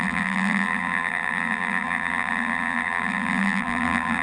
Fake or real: fake